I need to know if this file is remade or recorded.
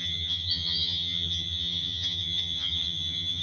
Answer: remade